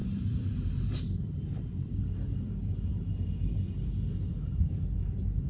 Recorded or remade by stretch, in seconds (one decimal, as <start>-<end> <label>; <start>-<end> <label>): 0.0-2.1 remade; 2.1-5.5 recorded